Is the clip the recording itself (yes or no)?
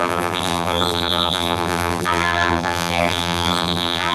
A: no